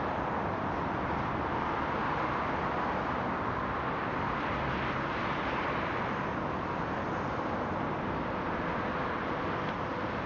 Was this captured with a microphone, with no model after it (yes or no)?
yes